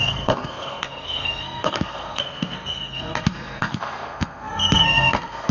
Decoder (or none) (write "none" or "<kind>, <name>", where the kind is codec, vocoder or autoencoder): codec, SNAC